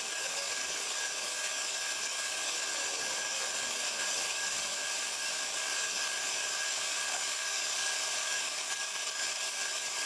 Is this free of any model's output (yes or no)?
no